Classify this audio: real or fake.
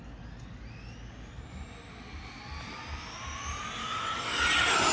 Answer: real